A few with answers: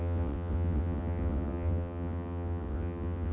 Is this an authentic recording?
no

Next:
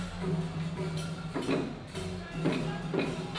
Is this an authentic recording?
yes